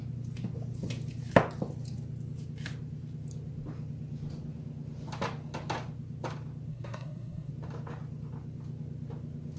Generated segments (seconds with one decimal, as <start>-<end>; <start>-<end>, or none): 6.7-7.5